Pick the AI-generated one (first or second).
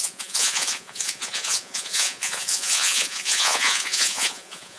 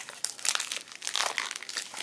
first